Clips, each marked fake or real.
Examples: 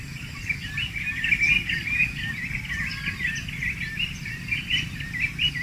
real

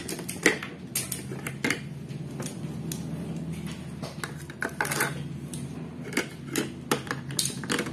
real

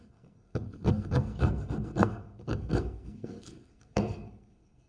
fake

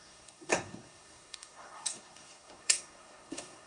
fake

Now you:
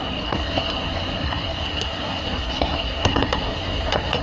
fake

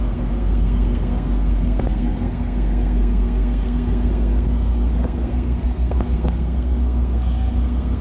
fake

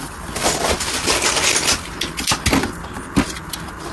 real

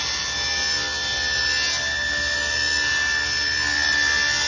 real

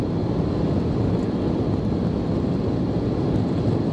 real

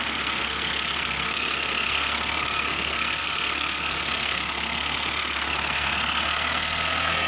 fake